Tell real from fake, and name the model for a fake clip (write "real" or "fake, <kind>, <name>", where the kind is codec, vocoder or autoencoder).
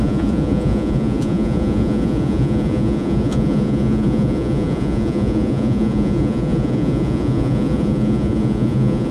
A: fake, vocoder, Vocos